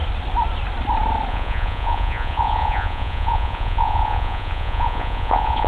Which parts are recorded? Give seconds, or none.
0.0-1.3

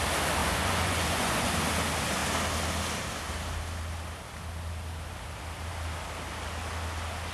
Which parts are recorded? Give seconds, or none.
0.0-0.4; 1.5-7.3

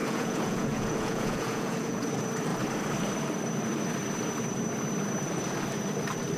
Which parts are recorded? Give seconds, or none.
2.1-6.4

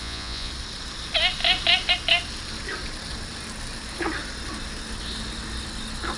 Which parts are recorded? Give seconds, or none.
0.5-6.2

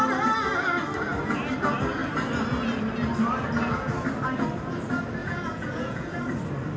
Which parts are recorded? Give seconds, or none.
0.0-5.2; 6.2-6.8

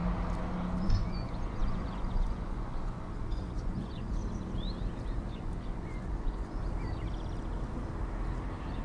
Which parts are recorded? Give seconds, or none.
0.0-0.8; 4.2-5.3; 6.6-8.8

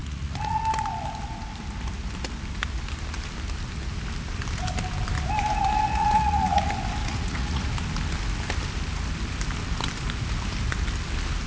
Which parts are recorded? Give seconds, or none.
0.6-5.9; 6.6-7.0; 7.7-11.5

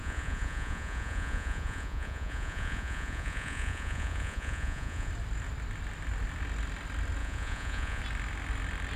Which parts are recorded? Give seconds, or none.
5.1-7.2; 8.0-9.0